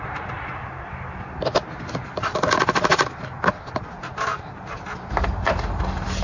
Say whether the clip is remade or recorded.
recorded